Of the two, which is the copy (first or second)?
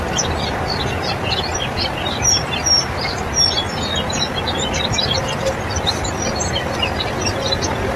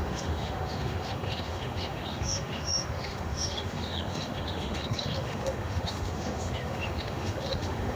second